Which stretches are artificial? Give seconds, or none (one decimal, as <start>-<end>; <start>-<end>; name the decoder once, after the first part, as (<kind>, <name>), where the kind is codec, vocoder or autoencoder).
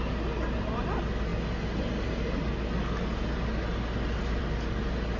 none